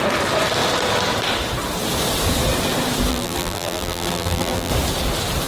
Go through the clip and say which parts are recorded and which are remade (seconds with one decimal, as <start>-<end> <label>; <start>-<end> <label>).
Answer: 0.0-3.1 recorded; 3.1-4.7 remade; 4.7-5.5 recorded